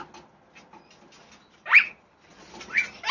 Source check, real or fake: real